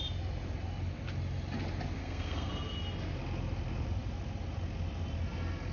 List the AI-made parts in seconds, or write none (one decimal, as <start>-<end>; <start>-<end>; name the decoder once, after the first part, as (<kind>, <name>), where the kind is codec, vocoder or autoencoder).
2.0-2.5 (codec, SNAC)